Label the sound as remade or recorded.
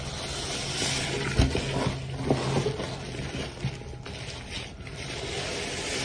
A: recorded